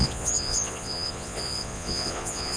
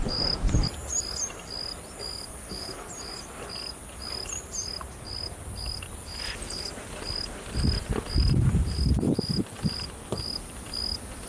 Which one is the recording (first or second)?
second